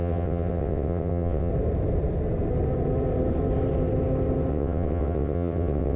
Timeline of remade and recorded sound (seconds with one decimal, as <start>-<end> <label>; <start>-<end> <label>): 0.0-1.5 remade; 1.5-4.5 recorded; 4.5-6.0 remade